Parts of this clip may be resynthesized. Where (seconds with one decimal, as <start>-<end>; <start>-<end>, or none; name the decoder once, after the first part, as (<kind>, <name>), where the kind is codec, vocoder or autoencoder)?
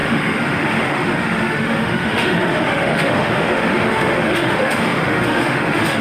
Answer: 0.0-6.0 (autoencoder, DAC-VAE)